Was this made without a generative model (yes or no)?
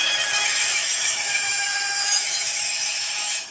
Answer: no